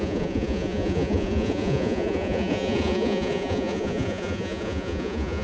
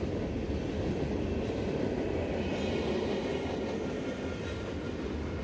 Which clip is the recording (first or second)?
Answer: second